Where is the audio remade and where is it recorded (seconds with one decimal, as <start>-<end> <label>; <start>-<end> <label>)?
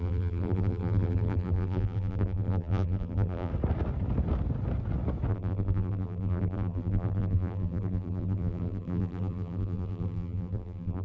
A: 0.0-3.5 remade; 3.5-5.3 recorded; 5.3-11.0 remade